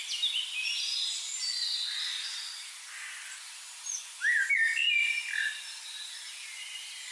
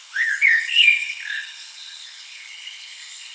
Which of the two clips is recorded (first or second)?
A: first